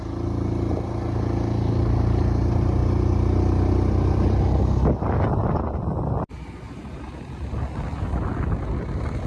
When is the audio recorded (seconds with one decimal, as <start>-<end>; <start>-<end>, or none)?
0.0-9.3